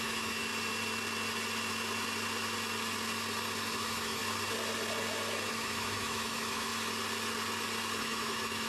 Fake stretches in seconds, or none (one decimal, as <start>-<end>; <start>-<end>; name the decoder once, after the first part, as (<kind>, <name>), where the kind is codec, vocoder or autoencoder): 0.0-0.5 (autoencoder, DAC-VAE); 3.7-4.2; 5.5-6.7; 8.0-8.7